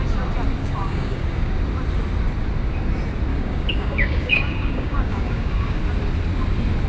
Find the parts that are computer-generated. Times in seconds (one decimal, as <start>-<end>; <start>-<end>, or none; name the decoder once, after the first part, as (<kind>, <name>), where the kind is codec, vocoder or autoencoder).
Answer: 0.6-1.5 (codec, DAC); 3.3-5.8